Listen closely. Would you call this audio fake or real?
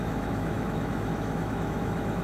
fake